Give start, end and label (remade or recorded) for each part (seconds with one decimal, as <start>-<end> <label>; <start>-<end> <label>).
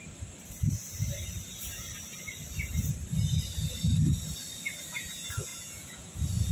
0.0-5.5 recorded; 5.5-6.1 remade; 6.1-6.5 recorded